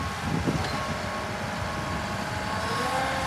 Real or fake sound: real